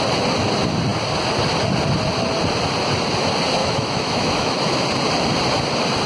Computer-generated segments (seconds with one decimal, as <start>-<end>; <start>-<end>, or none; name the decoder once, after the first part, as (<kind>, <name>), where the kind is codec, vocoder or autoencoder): 3.6-4.8 (autoencoder, DAC-VAE)